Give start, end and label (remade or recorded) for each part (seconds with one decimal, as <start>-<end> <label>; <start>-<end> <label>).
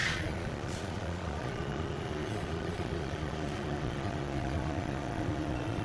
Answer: 0.0-5.8 remade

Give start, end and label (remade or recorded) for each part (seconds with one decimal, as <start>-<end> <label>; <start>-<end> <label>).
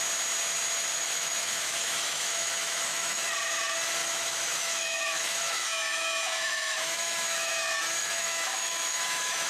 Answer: 0.0-0.9 recorded; 0.9-3.2 remade; 3.2-4.0 recorded; 4.0-7.5 remade; 7.5-8.0 recorded; 8.0-9.5 remade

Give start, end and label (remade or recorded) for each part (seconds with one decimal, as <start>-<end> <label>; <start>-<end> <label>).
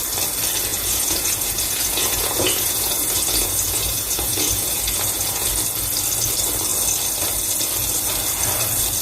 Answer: 0.0-0.7 recorded; 0.7-5.5 remade; 5.5-9.0 recorded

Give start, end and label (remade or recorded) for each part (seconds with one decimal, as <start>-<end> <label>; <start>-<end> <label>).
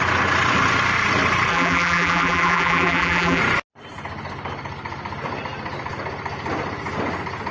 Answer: 0.0-1.5 recorded; 1.5-3.4 remade; 3.4-7.5 recorded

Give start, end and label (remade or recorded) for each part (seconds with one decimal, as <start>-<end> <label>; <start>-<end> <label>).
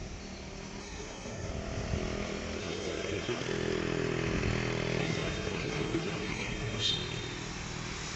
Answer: 0.0-0.8 recorded; 0.8-1.5 remade; 1.5-2.6 recorded; 2.6-3.4 remade; 3.4-5.0 recorded; 5.0-6.9 remade; 6.9-8.2 recorded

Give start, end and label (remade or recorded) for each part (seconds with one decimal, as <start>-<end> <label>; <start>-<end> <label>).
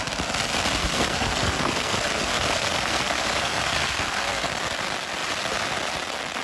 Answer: 0.0-0.8 recorded; 0.8-4.6 remade; 4.6-6.4 recorded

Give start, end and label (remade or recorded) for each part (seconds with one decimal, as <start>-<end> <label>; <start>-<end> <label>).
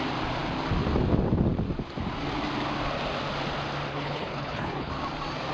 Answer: 0.0-3.9 recorded; 3.9-4.9 remade; 4.9-5.5 recorded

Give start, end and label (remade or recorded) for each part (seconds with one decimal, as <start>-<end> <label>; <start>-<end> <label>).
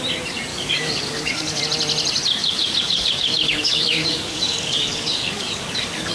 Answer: 0.0-0.5 recorded; 0.5-1.6 remade; 1.6-2.4 recorded; 2.4-6.1 remade